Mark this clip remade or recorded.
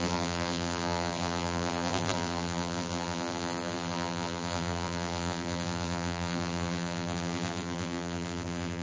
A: remade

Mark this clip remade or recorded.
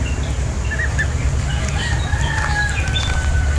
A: recorded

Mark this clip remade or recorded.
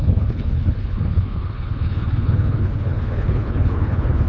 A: remade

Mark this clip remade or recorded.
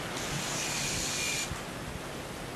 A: recorded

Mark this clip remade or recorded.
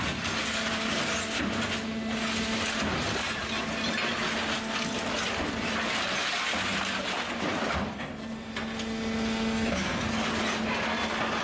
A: recorded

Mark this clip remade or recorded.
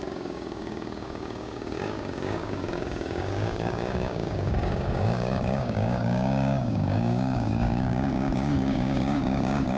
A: remade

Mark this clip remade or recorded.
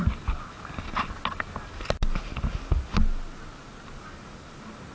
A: recorded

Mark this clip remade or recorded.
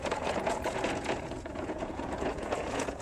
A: remade